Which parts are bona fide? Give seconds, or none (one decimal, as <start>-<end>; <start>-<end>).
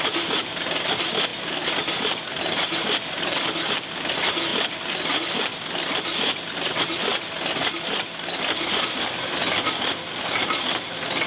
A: 1.3-3.7; 4.5-5.2; 7.1-8.1